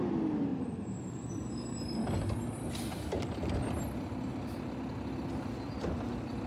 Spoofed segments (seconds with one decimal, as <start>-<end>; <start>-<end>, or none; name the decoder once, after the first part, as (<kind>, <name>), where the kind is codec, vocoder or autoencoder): none